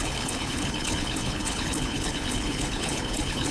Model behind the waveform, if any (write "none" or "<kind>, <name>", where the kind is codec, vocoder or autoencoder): codec, HILCodec